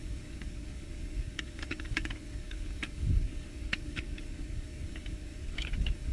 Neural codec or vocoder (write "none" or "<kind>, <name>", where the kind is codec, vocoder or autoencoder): codec, DAC